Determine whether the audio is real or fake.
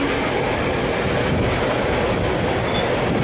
real